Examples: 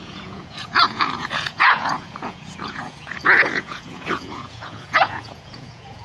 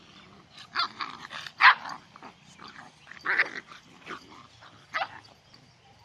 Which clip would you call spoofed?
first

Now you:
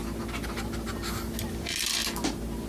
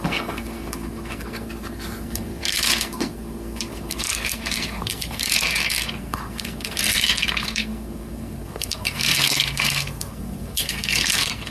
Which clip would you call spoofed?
second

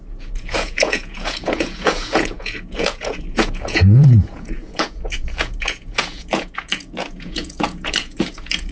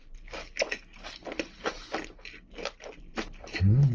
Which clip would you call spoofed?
first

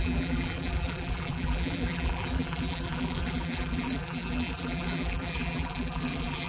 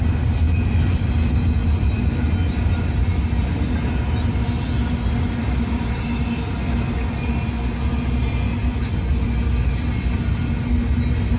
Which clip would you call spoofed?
first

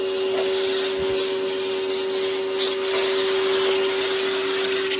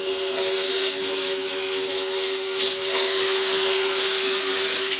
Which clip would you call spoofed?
second